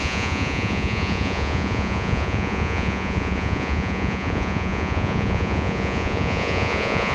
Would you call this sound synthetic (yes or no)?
yes